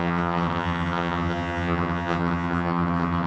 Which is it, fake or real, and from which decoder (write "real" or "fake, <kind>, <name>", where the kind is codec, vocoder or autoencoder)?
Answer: fake, vocoder, HiFi-GAN